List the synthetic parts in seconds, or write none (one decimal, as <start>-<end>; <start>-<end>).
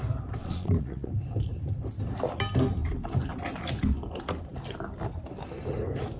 0.4-1.1